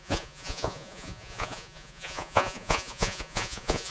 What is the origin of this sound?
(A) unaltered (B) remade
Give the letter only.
B